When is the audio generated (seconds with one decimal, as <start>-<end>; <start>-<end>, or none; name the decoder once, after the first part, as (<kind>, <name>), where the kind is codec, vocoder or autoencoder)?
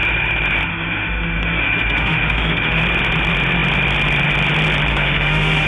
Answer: 0.7-2.8 (autoencoder, DAC-VAE); 4.9-5.7